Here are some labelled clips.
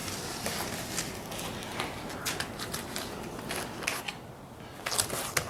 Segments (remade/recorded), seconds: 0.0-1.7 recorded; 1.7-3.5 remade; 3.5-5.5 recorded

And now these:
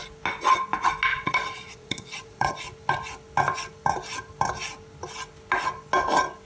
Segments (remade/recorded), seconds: 0.0-1.1 recorded; 1.1-2.5 remade; 2.5-6.5 recorded

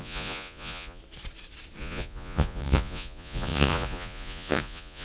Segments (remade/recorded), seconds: 0.0-1.0 remade; 1.0-1.8 recorded; 1.8-5.0 remade

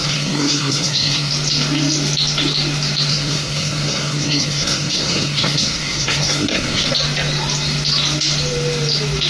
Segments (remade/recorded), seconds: 0.0-1.3 remade; 1.3-3.1 recorded; 3.1-6.9 remade; 6.9-9.3 recorded